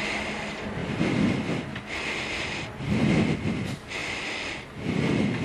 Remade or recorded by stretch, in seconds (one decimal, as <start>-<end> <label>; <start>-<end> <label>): 0.0-5.4 recorded